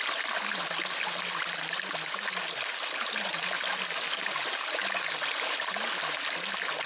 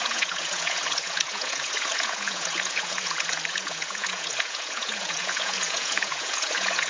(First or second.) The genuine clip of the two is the first